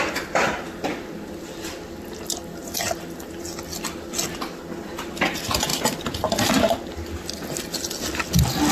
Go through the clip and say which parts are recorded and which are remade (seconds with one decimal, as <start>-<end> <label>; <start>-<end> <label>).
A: 0.0-5.7 recorded; 5.7-6.5 remade; 6.5-8.7 recorded